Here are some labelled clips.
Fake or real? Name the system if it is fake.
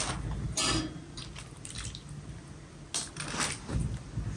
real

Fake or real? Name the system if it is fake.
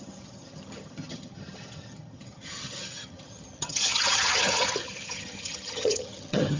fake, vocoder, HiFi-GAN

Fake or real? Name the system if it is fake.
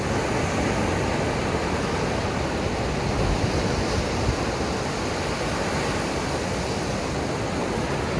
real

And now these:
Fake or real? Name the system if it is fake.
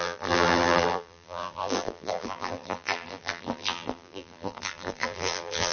fake, vocoder, BigVGAN v2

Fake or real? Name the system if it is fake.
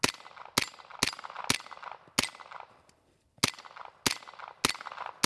real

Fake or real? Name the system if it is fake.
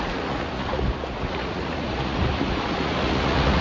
fake, vocoder, Vocos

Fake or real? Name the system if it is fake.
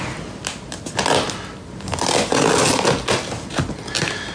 real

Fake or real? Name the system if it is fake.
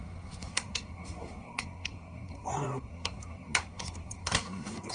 fake, codec, SNAC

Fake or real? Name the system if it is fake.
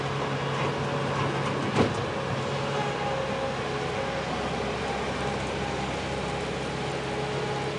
real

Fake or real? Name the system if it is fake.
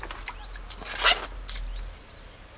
real